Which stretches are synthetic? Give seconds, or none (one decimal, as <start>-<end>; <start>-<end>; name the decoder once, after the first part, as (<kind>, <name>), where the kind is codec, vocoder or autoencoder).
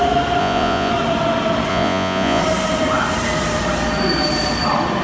0.4-0.9 (vocoder, Vocos); 1.7-2.4